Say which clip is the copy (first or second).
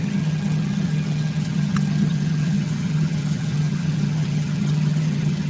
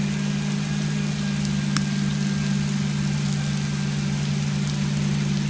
first